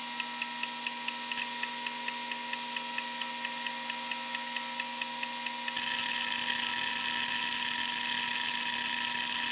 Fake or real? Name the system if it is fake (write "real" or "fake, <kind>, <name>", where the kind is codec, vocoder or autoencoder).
real